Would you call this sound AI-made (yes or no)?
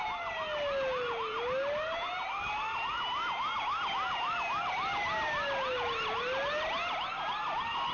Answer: no